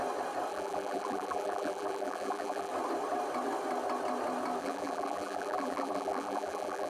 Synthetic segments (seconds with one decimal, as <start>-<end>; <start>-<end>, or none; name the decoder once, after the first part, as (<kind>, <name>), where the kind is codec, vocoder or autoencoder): 0.5-2.7 (vocoder, BigVGAN v2); 4.6-6.9